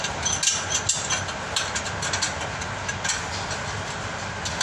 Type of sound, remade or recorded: recorded